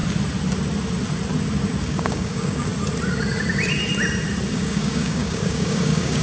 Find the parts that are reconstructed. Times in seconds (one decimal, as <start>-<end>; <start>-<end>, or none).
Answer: 1.8-2.7; 4.5-6.2